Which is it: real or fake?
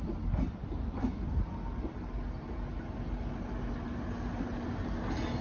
real